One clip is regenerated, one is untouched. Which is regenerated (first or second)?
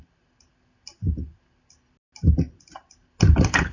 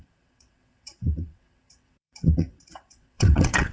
second